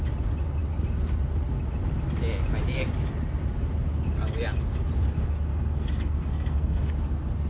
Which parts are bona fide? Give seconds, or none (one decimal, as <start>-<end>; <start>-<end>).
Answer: 0.0-5.5; 6.9-7.5